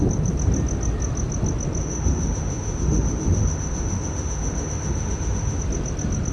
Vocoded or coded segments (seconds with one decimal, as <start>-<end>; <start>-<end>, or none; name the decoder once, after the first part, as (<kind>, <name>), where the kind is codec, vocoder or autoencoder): 1.8-5.6 (autoencoder, DAC-VAE)